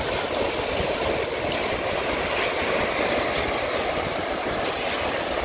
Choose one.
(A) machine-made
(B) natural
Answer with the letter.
B